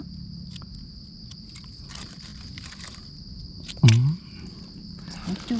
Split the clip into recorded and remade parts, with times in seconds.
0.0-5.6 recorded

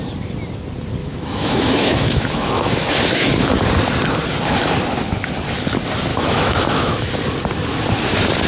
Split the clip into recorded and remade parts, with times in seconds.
0.0-1.0 recorded; 1.0-3.3 remade; 3.3-6.1 recorded; 6.1-7.1 remade; 7.1-8.5 recorded

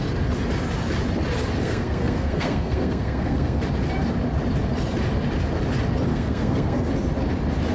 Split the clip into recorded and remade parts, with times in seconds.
0.0-1.6 recorded; 1.6-3.6 remade; 3.6-6.1 recorded; 6.1-6.9 remade; 6.9-7.7 recorded

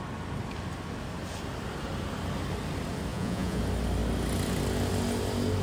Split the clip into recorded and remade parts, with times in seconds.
0.0-3.1 recorded; 3.1-3.6 remade; 3.6-5.6 recorded

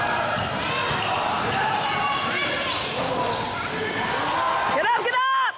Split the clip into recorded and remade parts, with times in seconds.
0.0-0.8 recorded; 0.8-3.1 remade; 3.1-5.6 recorded

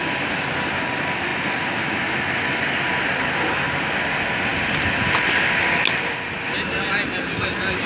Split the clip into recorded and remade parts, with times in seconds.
0.0-7.9 recorded

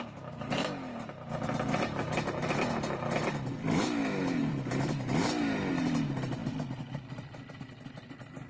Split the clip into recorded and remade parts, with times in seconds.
0.0-3.3 recorded; 3.3-5.7 remade; 5.7-6.4 recorded; 6.4-7.1 remade; 7.1-8.5 recorded